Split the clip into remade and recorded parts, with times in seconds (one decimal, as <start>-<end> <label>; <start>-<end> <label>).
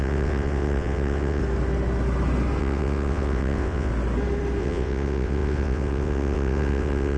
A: 0.0-1.4 remade; 1.4-2.6 recorded; 2.6-3.9 remade; 3.9-4.6 recorded; 4.6-7.2 remade